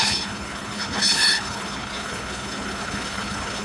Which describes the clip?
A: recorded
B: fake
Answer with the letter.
B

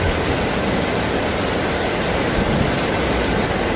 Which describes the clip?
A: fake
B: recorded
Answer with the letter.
B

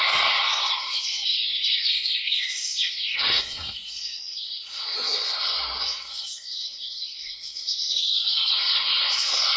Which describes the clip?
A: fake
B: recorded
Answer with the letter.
A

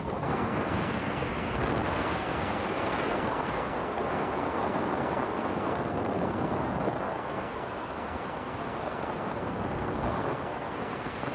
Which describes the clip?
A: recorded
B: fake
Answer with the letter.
B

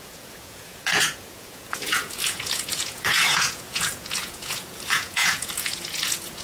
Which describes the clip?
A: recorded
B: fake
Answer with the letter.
B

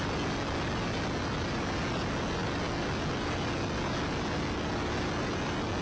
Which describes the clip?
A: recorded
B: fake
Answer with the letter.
A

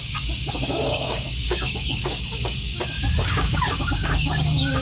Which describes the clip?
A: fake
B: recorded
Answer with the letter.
A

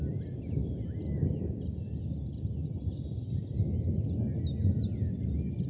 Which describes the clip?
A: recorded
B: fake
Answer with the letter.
A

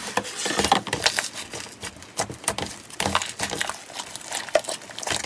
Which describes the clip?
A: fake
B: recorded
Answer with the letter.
B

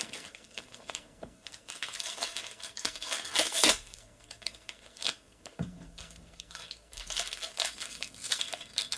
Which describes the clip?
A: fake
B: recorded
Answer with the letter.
A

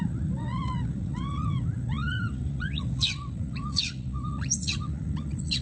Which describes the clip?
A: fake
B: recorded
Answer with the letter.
A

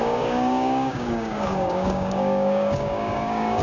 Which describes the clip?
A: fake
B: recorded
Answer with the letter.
A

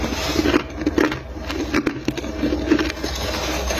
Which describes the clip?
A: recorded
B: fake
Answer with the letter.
A